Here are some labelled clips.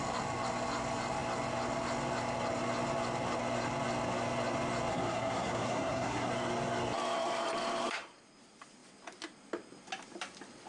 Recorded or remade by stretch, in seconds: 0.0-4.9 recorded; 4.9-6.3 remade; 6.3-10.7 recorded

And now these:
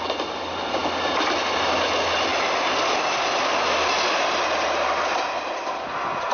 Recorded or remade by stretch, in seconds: 0.0-6.3 recorded

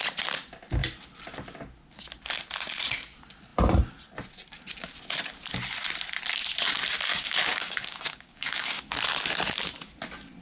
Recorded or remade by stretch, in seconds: 0.0-7.1 recorded; 7.1-8.8 remade; 8.8-10.4 recorded

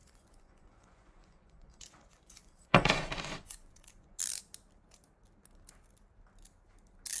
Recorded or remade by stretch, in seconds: 0.0-4.2 remade; 4.2-7.2 recorded

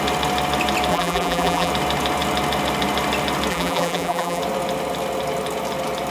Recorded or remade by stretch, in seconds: 0.0-0.9 recorded; 0.9-1.7 remade; 1.7-3.5 recorded; 3.5-4.4 remade; 4.4-6.1 recorded

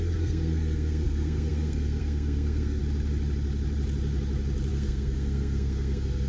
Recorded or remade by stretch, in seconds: 0.0-2.8 remade; 2.8-4.7 recorded; 4.7-6.3 remade

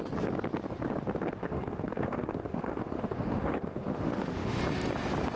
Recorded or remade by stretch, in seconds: 0.0-1.4 recorded; 1.4-4.6 remade; 4.6-5.4 recorded

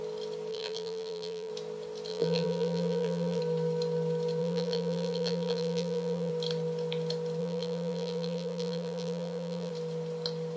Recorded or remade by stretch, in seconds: 0.0-0.5 recorded; 0.5-1.5 remade; 1.5-2.1 recorded; 2.1-3.4 remade; 3.4-4.4 recorded; 4.4-6.3 remade; 6.3-7.4 recorded; 7.4-9.7 remade; 9.7-10.6 recorded